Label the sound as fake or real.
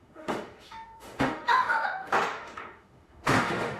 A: fake